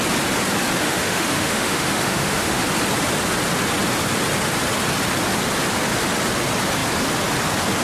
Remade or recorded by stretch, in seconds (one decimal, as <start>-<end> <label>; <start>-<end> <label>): 0.0-0.8 recorded; 0.8-2.6 remade; 2.6-7.8 recorded